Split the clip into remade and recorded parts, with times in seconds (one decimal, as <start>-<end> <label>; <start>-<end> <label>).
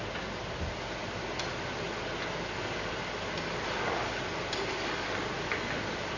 0.0-6.2 recorded